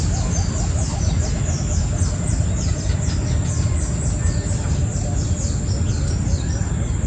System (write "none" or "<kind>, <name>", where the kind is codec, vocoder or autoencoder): none